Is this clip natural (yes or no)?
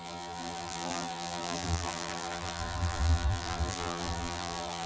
no